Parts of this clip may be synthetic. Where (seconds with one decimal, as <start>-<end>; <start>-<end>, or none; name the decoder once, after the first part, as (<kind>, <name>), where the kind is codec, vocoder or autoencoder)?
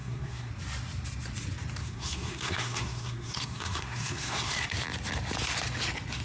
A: 0.0-0.5 (codec, SNAC); 1.8-4.7